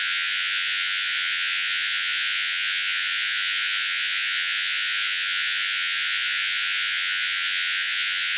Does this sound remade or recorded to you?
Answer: remade